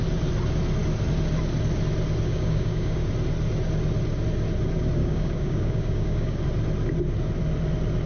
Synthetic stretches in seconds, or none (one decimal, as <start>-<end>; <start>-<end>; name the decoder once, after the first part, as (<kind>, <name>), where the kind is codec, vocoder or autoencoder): 2.3-3.1 (codec, DAC); 5.0-6.4